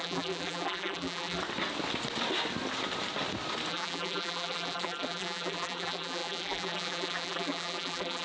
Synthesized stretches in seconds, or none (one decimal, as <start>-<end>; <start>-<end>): 0.0-1.4; 3.7-8.2

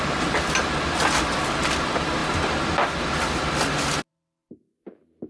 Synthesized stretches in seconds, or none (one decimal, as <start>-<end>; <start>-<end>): none

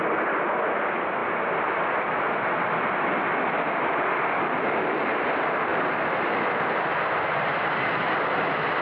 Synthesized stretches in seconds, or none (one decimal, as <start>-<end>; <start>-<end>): none

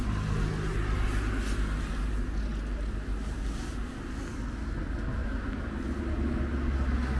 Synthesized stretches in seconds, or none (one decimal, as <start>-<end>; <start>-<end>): none

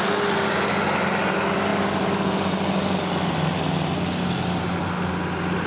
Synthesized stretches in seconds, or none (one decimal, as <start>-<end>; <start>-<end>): none

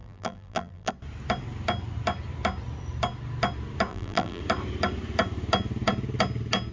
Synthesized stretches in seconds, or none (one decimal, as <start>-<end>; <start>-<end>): 0.0-0.9; 3.9-4.4